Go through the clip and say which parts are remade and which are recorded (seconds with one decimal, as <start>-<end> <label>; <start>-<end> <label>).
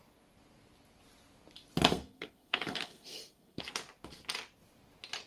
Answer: 0.0-1.9 recorded; 1.9-3.6 remade; 3.6-5.3 recorded